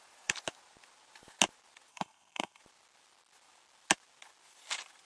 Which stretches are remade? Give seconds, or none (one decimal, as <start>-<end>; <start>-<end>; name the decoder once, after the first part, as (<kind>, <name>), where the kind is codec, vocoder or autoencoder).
1.9-2.6 (codec, SNAC)